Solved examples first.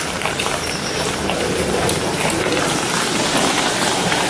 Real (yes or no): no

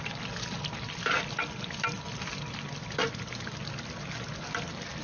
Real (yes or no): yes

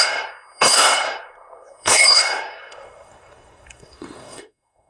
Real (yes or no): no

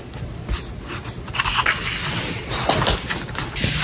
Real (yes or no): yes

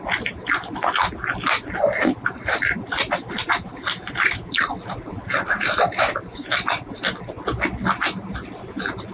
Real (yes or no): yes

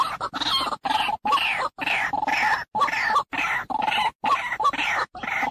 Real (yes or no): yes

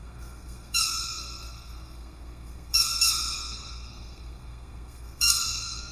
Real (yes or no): no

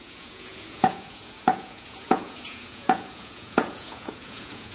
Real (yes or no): no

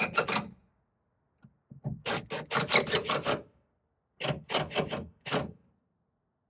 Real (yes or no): yes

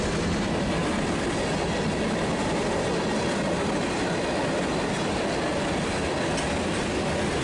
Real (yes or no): yes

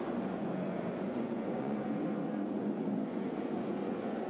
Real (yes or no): no